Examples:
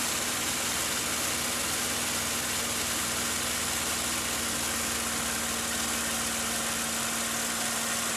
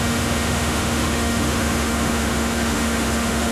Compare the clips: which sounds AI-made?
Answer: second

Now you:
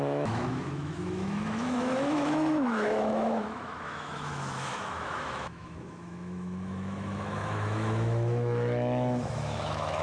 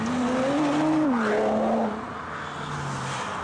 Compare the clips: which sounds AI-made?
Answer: first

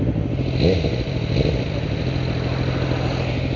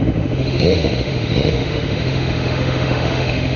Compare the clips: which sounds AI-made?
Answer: second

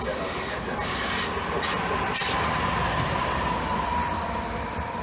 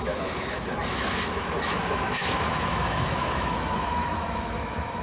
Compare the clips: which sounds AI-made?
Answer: second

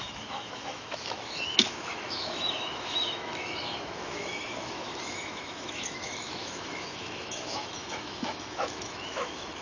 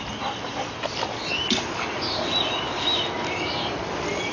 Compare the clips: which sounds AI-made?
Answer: first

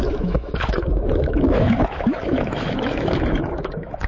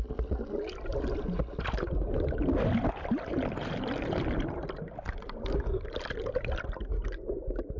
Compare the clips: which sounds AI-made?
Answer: first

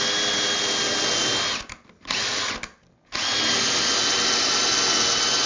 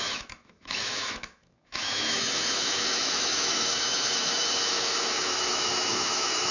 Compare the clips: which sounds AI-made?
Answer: second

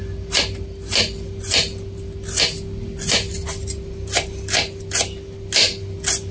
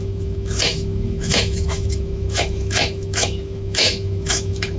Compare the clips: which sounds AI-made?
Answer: second